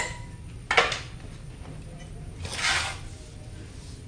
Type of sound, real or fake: real